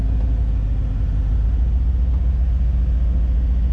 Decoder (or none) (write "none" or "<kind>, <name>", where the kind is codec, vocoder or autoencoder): none